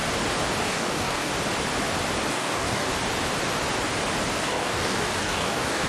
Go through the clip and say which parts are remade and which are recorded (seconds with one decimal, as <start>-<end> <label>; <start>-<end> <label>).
0.0-0.6 recorded; 0.6-1.3 remade; 1.3-2.3 recorded; 2.3-2.9 remade; 2.9-4.4 recorded; 4.4-5.9 remade